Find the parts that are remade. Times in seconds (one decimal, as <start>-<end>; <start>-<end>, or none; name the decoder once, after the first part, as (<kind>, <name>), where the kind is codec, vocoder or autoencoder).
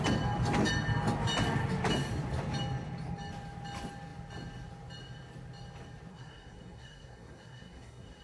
6.1-8.2 (codec, SNAC)